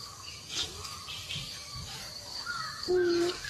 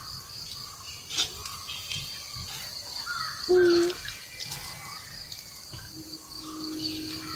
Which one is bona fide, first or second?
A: second